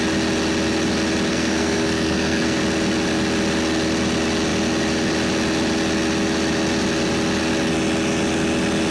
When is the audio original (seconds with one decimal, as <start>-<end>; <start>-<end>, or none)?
0.0-1.3; 2.6-8.9